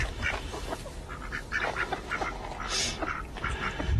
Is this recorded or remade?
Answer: recorded